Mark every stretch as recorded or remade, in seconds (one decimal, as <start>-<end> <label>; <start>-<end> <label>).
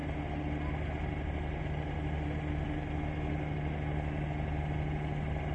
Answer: 0.0-5.5 recorded